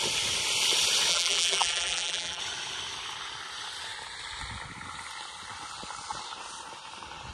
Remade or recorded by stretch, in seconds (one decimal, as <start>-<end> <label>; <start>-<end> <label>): 0.0-1.1 recorded; 1.1-2.4 remade; 2.4-7.3 recorded